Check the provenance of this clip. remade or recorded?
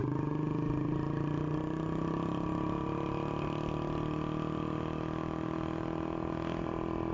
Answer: recorded